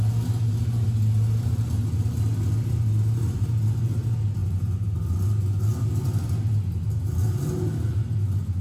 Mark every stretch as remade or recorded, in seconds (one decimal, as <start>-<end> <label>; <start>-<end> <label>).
0.0-8.6 recorded